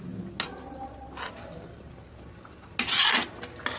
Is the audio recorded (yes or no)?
yes